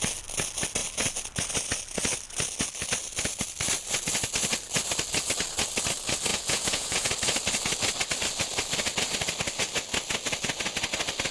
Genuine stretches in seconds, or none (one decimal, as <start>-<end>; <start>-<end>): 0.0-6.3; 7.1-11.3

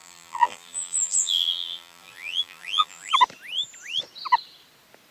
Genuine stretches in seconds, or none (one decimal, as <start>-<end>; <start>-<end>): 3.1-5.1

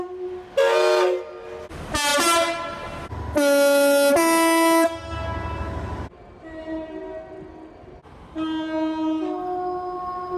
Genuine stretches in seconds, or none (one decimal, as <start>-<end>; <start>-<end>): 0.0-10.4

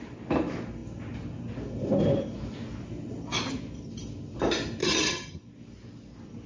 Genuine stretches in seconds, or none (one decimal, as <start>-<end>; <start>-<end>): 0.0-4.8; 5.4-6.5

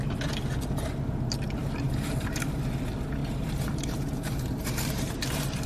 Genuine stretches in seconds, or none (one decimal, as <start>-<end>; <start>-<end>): 0.0-1.6; 2.6-3.2

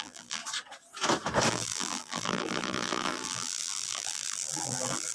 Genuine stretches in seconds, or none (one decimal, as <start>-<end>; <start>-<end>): 0.4-1.5

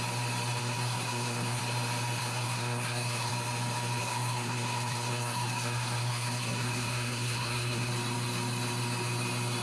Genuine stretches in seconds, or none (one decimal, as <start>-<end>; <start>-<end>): 0.0-0.6; 1.6-2.2; 3.3-4.0; 7.9-9.6